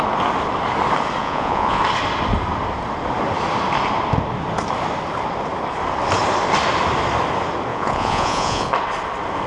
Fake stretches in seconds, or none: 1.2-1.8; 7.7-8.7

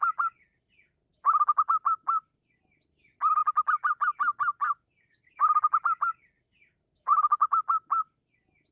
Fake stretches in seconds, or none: none

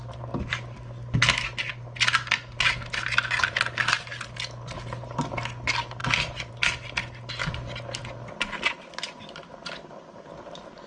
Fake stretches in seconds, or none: none

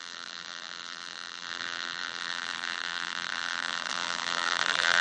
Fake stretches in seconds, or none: 0.0-5.0

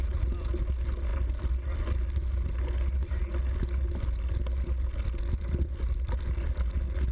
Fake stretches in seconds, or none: none

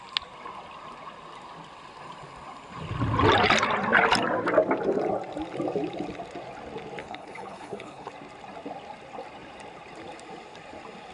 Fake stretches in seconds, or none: 7.0-8.1

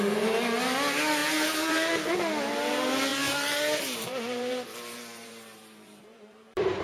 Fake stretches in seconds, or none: 1.2-1.9; 3.1-6.8